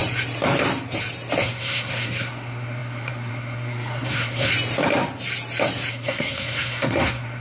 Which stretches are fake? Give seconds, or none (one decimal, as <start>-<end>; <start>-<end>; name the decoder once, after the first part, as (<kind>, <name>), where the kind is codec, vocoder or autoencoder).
1.4-4.5 (codec, SNAC); 5.9-7.4